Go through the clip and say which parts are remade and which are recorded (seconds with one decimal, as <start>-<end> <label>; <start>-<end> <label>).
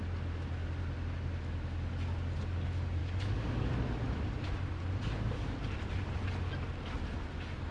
0.0-3.0 recorded; 3.0-3.7 remade; 3.7-7.7 recorded